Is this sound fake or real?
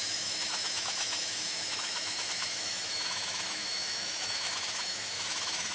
fake